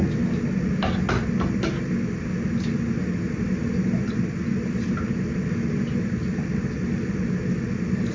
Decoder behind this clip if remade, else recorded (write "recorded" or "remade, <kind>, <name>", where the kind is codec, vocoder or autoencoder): recorded